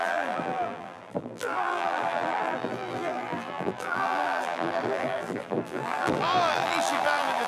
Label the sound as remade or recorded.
remade